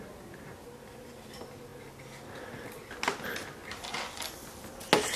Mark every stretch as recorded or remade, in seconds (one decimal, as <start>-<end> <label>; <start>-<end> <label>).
0.0-5.2 recorded